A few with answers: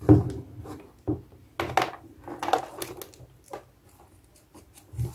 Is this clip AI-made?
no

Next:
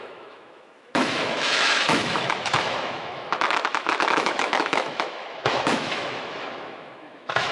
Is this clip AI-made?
yes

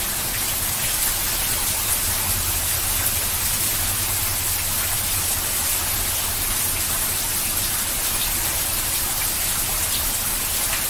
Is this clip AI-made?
no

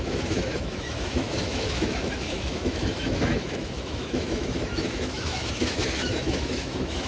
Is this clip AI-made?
yes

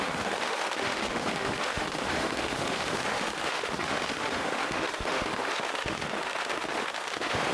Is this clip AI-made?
yes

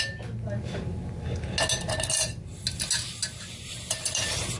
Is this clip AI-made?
no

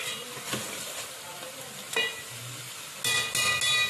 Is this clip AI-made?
no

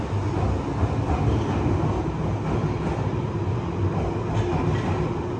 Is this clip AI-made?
no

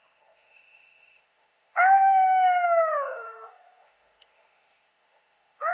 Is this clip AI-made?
yes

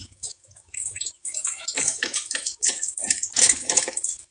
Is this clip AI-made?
yes